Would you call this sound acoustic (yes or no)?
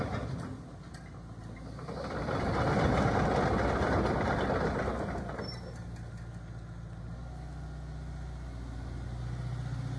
yes